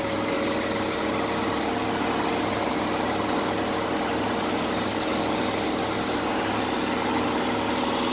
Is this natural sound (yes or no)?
yes